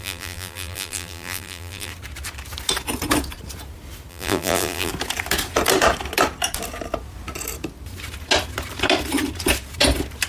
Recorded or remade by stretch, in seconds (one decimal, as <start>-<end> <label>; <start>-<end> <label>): 0.0-1.9 remade; 1.9-4.1 recorded; 4.1-4.9 remade; 4.9-10.3 recorded